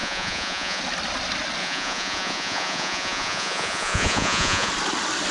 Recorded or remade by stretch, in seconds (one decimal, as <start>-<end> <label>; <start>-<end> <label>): 0.0-0.8 remade; 0.8-1.6 recorded; 1.6-4.7 remade; 4.7-5.3 recorded